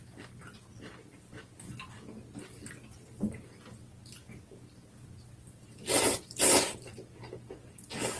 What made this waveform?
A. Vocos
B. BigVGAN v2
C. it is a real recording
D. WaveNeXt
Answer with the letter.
C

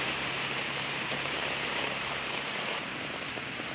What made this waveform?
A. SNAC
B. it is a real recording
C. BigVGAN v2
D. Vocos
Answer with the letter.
C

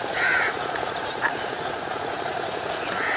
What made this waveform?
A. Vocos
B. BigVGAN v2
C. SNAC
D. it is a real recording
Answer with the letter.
A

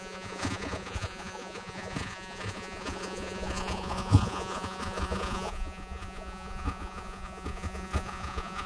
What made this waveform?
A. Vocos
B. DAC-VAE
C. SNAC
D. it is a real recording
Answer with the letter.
A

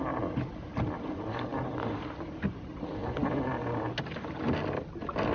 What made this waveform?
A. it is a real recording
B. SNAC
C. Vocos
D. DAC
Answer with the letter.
A